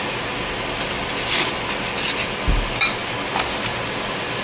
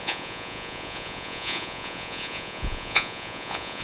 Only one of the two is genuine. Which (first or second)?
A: first